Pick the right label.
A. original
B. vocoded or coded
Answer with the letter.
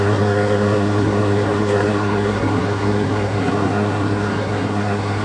B